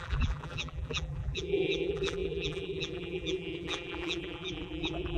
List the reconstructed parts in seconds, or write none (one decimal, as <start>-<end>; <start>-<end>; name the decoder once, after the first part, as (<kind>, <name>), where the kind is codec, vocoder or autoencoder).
0.0-5.2 (vocoder, BigVGAN v2)